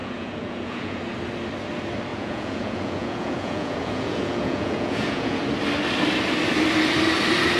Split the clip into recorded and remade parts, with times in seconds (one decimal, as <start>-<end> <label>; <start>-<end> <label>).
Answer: 0.0-1.0 remade; 1.0-2.1 recorded; 2.1-5.4 remade; 5.4-7.6 recorded